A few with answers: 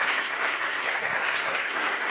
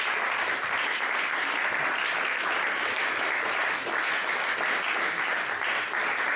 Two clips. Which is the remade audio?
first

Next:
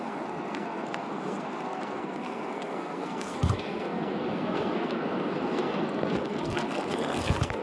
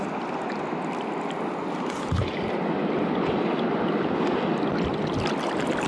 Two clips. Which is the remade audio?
first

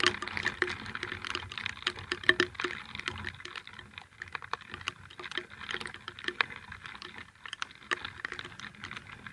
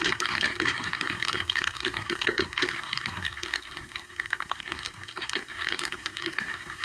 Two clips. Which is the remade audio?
second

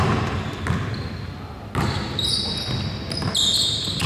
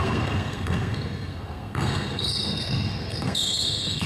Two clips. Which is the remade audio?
second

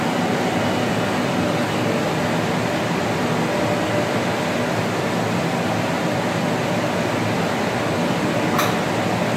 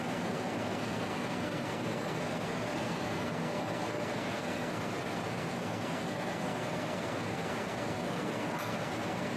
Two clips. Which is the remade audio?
second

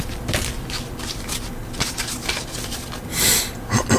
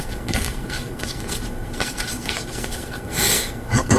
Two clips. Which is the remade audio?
second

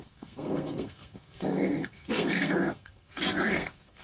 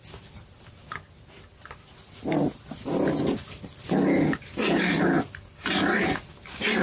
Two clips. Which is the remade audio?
first